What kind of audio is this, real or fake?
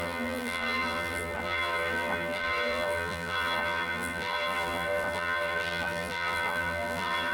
fake